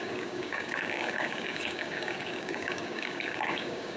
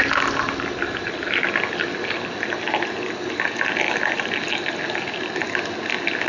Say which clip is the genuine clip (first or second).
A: second